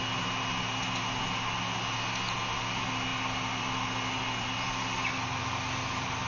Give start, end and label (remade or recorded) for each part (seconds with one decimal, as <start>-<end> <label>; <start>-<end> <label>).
0.0-6.3 recorded